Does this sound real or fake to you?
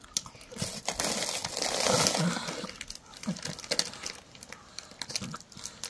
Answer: real